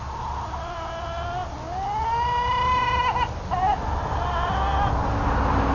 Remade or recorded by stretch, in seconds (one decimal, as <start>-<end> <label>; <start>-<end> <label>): 0.0-5.7 recorded